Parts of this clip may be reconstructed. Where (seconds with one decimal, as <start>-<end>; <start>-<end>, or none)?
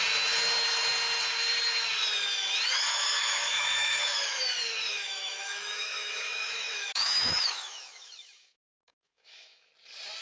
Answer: 2.9-4.4; 4.9-9.7